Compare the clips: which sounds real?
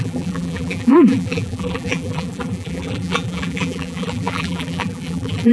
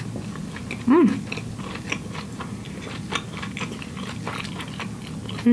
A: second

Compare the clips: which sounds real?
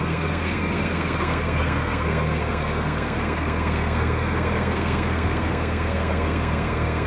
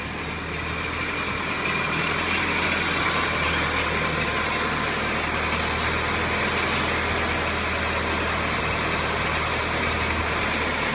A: second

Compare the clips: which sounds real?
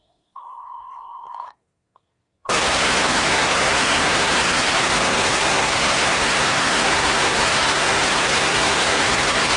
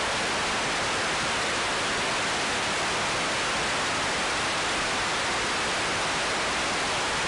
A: second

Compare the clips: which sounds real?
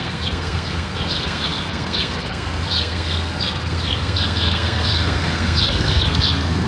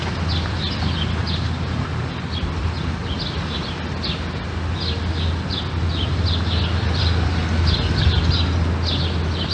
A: second